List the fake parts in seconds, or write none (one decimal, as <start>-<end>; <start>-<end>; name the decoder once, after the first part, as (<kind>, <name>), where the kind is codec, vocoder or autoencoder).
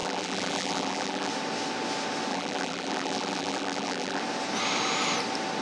0.0-1.3 (vocoder, BigVGAN v2); 2.3-4.2